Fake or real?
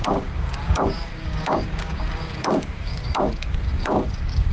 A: fake